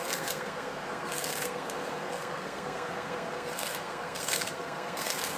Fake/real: fake